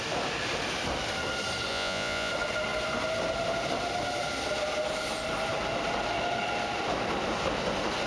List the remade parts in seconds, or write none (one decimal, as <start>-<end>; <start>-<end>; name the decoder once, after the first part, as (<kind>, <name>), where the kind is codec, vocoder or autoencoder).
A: 1.7-2.3 (vocoder, Vocos)